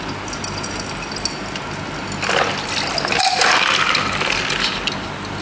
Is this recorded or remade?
recorded